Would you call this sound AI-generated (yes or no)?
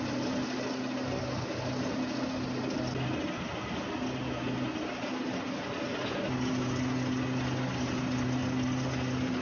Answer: no